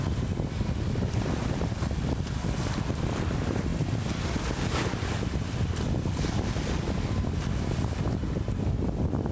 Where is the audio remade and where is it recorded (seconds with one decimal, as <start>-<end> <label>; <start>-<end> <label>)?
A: 0.0-9.3 recorded